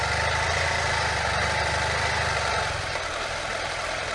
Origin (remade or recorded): recorded